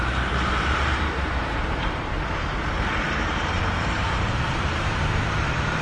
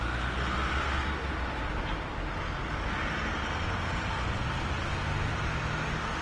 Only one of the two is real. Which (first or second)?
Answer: second